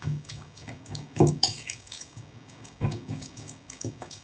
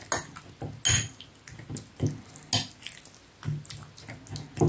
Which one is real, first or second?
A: second